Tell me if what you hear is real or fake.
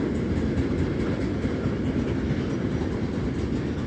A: real